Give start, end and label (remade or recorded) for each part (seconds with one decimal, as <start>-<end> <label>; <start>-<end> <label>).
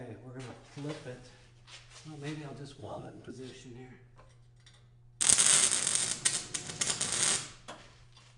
0.0-2.8 recorded; 2.8-3.3 remade; 3.3-8.4 recorded